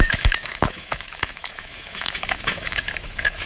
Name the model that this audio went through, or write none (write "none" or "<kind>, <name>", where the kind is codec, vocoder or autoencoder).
autoencoder, DAC-VAE